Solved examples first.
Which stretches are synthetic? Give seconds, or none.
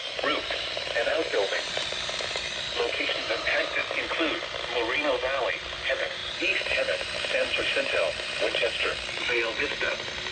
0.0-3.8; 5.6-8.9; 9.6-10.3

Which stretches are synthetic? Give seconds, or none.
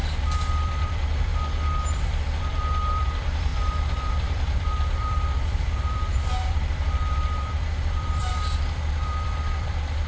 0.5-1.3; 1.9-10.1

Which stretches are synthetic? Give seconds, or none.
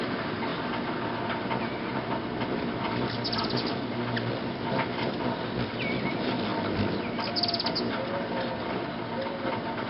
none